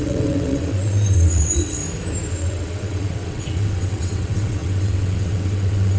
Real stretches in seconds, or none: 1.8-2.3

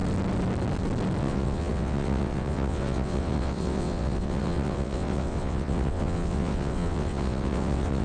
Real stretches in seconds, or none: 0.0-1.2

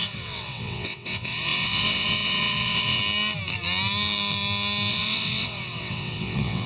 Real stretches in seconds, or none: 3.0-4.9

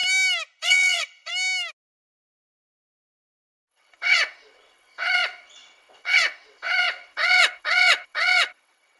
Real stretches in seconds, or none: 0.0-0.6; 1.3-3.7

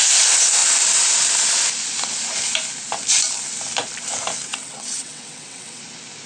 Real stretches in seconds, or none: 0.0-4.5; 5.8-6.3